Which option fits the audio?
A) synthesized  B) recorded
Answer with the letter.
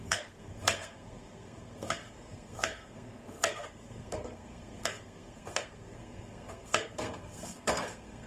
A